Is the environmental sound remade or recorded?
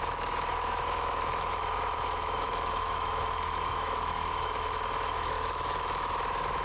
remade